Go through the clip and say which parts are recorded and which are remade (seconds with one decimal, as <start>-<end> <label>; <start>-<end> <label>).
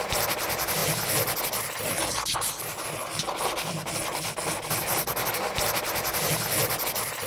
0.0-7.3 recorded